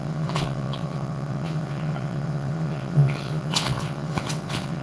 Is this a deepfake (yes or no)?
yes